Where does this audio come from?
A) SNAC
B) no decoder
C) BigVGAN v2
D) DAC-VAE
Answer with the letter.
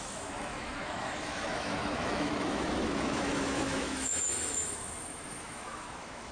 D